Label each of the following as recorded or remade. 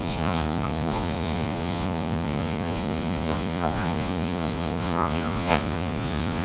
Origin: remade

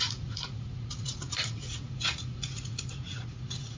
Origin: remade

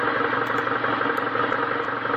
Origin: recorded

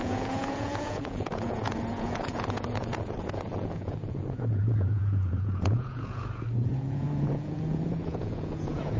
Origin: remade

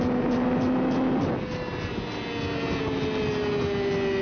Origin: recorded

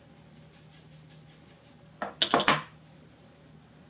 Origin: recorded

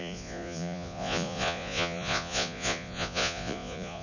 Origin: remade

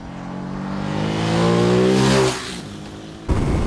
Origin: recorded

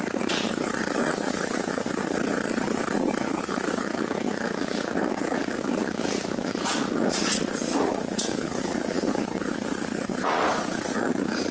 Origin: remade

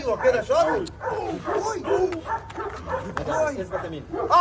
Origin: recorded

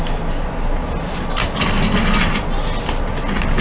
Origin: recorded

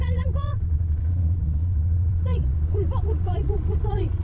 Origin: remade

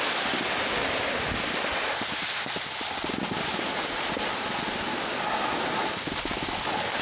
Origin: recorded